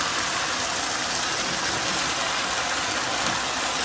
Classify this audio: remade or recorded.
recorded